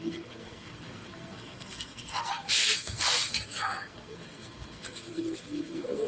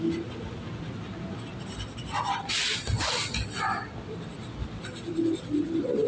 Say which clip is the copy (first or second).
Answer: first